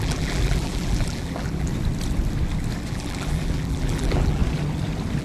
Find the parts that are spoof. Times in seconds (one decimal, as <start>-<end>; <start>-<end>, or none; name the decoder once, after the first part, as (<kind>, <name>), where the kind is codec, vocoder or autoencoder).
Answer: 0.0-1.7 (vocoder, BigVGAN v2); 2.9-4.4